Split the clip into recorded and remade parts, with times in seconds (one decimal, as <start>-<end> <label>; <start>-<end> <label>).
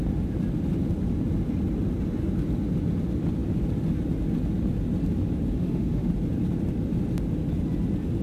0.0-5.6 recorded; 5.6-6.1 remade; 6.1-8.2 recorded